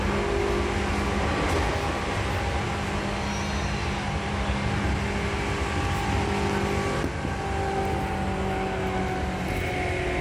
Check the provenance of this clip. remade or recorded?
recorded